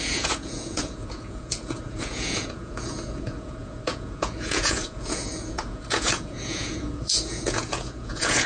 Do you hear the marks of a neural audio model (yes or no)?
yes